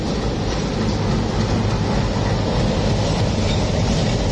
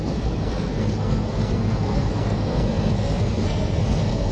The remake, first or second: second